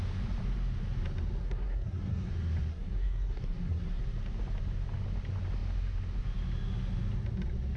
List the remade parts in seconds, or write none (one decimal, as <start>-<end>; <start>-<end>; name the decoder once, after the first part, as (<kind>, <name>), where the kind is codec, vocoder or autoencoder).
1.4-2.3 (codec, SNAC); 2.7-4.0